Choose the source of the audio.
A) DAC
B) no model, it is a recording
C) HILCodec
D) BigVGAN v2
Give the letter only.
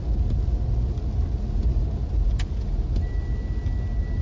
B